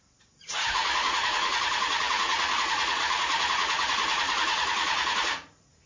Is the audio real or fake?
fake